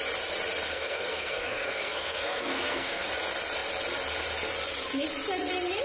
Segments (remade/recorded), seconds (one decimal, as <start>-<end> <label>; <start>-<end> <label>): 0.0-0.7 recorded; 0.7-3.1 remade; 3.1-5.8 recorded